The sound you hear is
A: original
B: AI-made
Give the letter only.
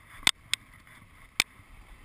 A